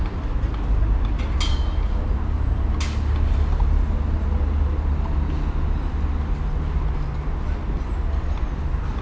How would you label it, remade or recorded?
recorded